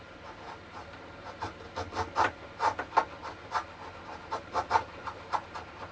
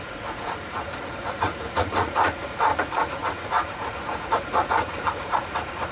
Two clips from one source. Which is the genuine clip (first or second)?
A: first